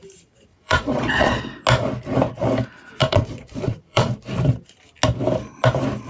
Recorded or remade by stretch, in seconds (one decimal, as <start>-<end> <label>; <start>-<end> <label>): 0.0-0.5 recorded; 0.5-1.4 remade; 1.4-3.0 recorded; 3.0-4.1 remade; 4.1-6.1 recorded

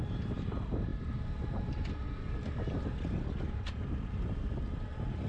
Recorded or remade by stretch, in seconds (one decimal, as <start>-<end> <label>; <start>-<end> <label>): 0.0-5.3 recorded